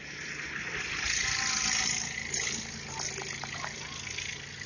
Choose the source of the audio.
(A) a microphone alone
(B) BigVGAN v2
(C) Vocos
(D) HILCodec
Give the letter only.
A